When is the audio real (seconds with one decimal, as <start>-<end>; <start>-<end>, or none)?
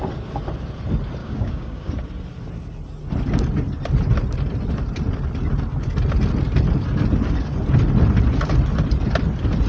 0.0-1.2; 1.9-9.7